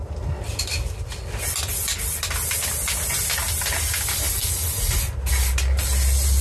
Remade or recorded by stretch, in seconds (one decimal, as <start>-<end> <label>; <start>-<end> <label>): 0.0-6.4 recorded